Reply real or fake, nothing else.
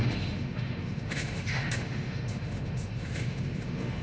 fake